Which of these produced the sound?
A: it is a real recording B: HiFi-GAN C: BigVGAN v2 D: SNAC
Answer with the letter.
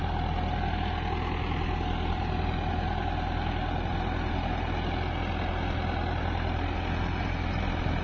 A